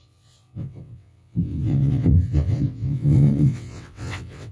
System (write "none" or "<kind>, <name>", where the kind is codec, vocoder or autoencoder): vocoder, WaveNeXt